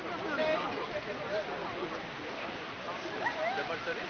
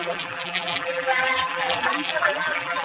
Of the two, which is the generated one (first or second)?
second